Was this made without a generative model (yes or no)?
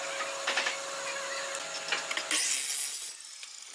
yes